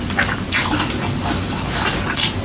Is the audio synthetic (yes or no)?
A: no